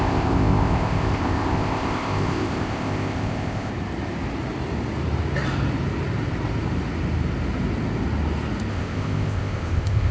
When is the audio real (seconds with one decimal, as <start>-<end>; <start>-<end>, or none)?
3.7-8.7